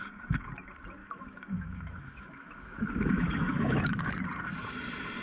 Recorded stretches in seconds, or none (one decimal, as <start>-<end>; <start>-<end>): 0.0-1.0; 4.1-5.2